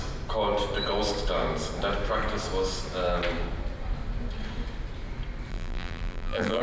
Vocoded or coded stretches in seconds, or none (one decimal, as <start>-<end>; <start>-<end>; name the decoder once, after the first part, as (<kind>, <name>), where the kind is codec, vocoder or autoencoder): 5.5-6.6 (vocoder, BigVGAN v2)